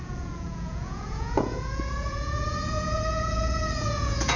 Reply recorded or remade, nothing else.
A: remade